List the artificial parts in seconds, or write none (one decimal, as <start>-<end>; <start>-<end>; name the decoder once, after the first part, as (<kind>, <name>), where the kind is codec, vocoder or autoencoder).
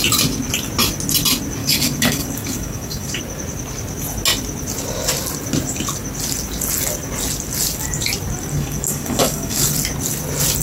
1.6-3.2 (codec, DAC); 8.5-9.7